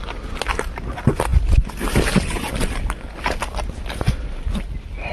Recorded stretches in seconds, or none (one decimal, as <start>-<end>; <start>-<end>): 0.0-5.1